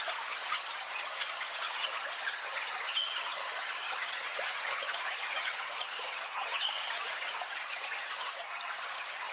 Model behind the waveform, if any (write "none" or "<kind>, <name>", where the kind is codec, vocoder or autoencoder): vocoder, HiFi-GAN